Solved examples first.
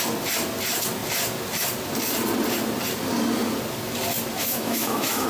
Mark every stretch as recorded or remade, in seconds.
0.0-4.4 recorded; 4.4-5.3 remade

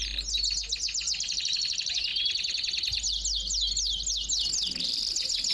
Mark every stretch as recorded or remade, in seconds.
0.0-5.5 recorded

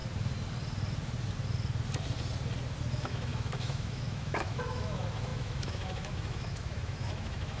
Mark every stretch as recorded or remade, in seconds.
0.0-2.9 recorded; 2.9-7.6 remade

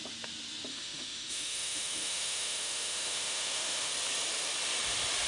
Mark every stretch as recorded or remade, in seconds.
0.0-0.7 recorded; 0.7-3.9 remade; 3.9-5.3 recorded

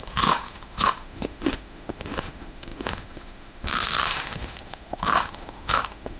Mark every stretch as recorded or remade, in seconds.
0.0-6.2 remade